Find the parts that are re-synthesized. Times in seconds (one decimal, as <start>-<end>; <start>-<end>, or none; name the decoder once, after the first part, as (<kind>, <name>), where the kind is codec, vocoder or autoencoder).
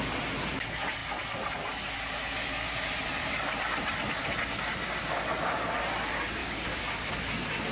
2.4-2.9 (codec, DAC); 6.4-7.1